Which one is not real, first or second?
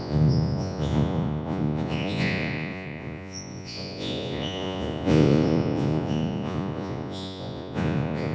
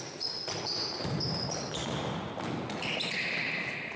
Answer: first